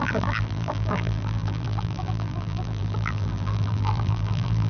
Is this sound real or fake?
fake